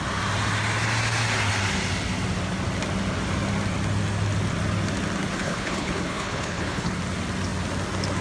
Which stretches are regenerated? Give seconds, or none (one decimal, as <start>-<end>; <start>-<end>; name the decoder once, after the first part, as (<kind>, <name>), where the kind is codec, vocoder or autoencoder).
5.4-6.9 (codec, HILCodec)